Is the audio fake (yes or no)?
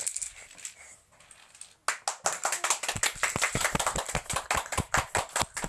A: no